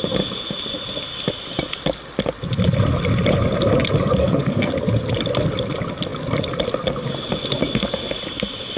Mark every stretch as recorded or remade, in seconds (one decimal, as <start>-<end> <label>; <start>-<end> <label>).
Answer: 0.0-4.2 recorded; 4.2-4.7 remade; 4.7-8.8 recorded